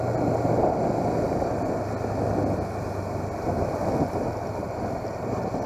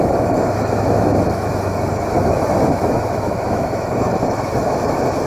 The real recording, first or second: first